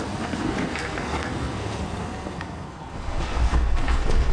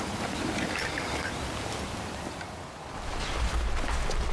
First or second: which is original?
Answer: second